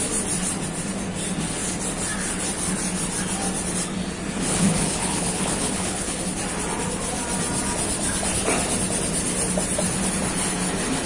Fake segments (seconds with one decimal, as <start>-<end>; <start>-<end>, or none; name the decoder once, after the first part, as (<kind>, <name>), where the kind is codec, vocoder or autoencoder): 4.5-6.2 (codec, HILCodec)